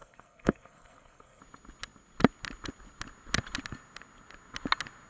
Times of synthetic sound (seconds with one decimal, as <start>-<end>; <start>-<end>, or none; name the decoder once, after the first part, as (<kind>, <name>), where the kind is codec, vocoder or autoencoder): 0.0-1.4 (codec, SNAC)